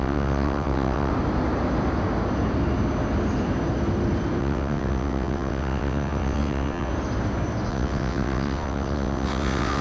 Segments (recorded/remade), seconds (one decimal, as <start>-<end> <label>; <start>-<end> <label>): 0.0-1.1 remade; 1.1-4.4 recorded; 4.4-6.9 remade; 6.9-7.7 recorded; 7.7-9.8 remade